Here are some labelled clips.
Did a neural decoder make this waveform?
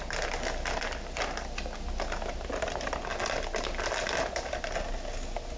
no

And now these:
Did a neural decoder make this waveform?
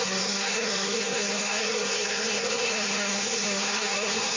yes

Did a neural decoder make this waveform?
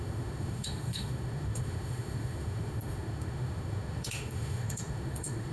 yes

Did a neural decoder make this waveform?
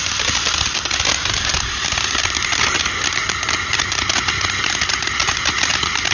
no